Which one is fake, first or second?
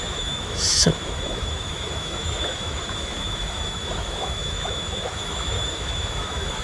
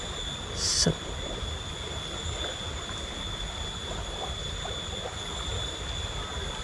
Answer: first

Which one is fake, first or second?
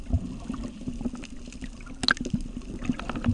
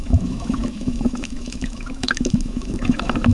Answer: second